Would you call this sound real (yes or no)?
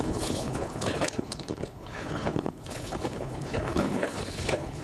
no